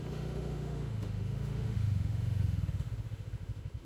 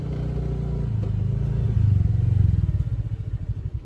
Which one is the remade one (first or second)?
first